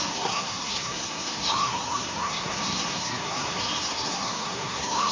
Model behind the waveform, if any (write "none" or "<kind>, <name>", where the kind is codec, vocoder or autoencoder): codec, SNAC